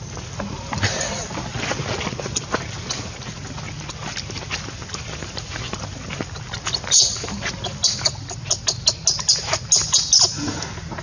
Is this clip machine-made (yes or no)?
no